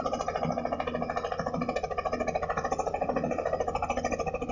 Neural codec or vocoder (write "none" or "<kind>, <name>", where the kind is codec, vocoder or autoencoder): none